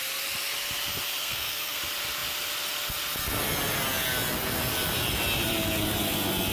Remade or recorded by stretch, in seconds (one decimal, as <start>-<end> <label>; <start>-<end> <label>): 0.0-1.2 recorded; 1.2-1.8 remade; 1.8-6.5 recorded